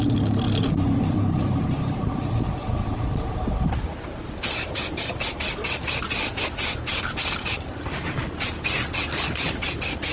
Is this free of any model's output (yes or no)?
yes